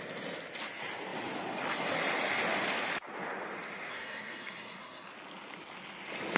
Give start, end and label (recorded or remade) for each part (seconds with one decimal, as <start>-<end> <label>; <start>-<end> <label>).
0.0-3.9 recorded; 3.9-5.1 remade; 5.1-6.4 recorded